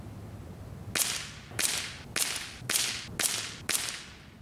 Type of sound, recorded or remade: recorded